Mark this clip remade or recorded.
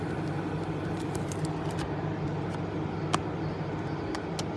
recorded